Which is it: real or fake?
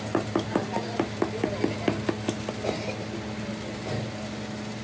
real